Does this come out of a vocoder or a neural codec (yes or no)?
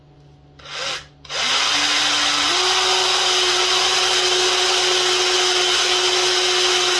no